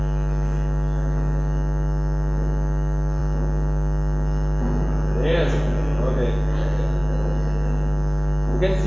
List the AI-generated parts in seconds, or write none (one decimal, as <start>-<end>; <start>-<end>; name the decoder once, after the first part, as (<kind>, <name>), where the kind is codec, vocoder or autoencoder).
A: none